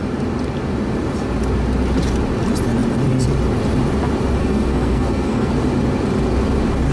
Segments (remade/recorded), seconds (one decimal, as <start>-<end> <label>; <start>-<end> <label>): 0.0-4.4 recorded; 4.4-5.5 remade; 5.5-6.9 recorded